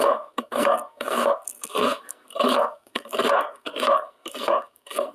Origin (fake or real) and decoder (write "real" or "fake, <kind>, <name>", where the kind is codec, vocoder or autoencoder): fake, codec, SNAC